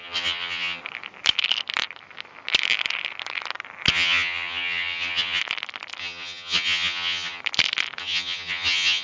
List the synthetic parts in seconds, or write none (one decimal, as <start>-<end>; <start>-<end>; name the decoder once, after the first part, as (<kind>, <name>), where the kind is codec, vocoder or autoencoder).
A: 0.0-0.8 (vocoder, HiFi-GAN); 3.9-5.4; 6.0-7.4; 8.0-9.0